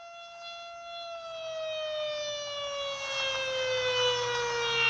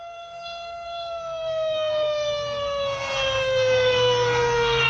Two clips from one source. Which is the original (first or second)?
first